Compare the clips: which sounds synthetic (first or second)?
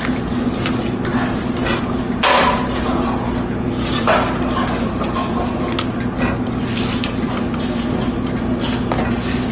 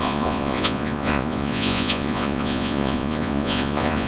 second